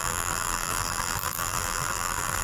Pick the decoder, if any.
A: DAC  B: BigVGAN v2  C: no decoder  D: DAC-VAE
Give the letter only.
B